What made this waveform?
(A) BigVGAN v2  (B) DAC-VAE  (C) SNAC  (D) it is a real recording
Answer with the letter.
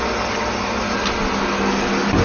D